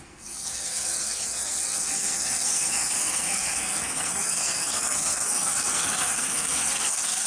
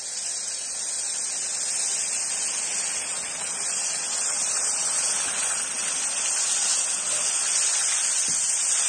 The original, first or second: second